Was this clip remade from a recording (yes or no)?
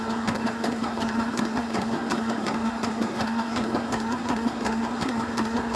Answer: yes